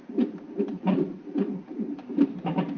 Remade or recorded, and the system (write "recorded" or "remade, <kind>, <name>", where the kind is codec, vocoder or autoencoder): remade, vocoder, BigVGAN v2